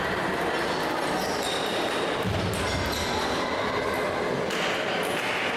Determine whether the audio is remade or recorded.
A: recorded